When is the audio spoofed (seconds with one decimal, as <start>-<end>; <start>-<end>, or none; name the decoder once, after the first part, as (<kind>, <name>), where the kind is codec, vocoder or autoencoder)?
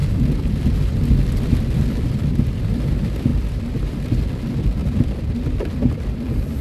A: 0.0-6.6 (vocoder, BigVGAN v2)